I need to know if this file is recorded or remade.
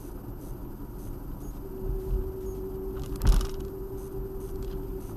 recorded